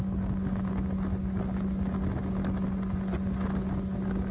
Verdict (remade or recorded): recorded